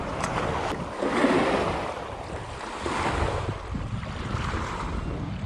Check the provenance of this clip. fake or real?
real